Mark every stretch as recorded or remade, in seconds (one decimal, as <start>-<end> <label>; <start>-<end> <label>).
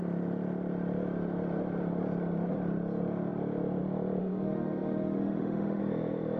0.0-4.2 recorded; 4.2-5.8 remade; 5.8-6.4 recorded